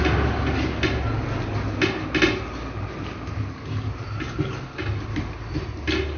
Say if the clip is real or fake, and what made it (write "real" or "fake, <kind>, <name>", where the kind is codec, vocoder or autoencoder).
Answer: real